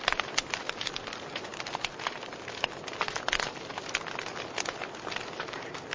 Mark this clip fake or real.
real